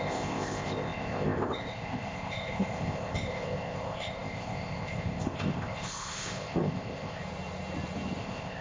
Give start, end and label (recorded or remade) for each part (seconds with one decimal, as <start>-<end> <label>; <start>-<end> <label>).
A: 0.0-7.2 remade; 7.2-8.2 recorded; 8.2-8.6 remade